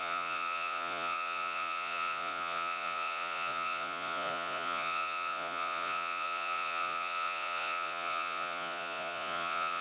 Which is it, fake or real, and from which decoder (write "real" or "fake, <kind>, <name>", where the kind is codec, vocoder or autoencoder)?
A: fake, vocoder, Vocos